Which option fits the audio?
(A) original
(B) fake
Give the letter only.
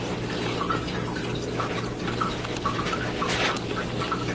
A